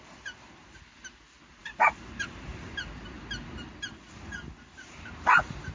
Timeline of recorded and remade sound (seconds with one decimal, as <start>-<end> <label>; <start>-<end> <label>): 0.0-5.7 recorded